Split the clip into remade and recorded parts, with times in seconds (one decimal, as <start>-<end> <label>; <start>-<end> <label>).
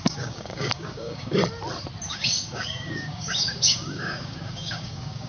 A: 0.0-1.4 remade; 1.4-2.1 recorded; 2.1-5.3 remade